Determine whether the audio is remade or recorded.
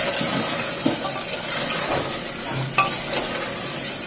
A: recorded